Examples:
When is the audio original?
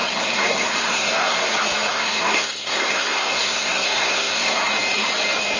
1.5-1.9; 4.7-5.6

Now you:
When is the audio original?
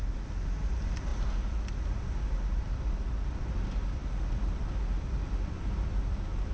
0.0-6.5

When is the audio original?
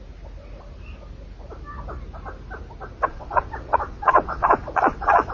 0.0-3.1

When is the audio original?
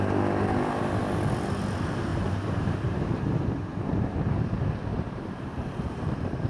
0.0-2.1; 4.5-4.9; 6.0-6.5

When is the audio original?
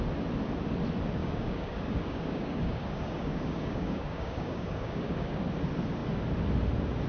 0.0-1.2; 5.4-7.1